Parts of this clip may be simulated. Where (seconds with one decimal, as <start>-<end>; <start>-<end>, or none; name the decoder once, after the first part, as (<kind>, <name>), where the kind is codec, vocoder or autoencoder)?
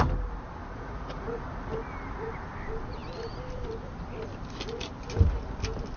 0.6-1.4 (vocoder, Vocos)